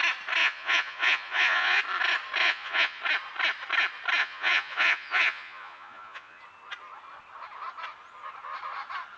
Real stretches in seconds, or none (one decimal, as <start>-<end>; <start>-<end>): 0.0-0.4; 1.8-2.4; 3.0-4.2; 6.4-9.2